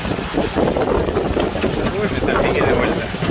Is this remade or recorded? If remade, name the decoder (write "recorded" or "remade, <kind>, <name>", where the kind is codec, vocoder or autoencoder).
recorded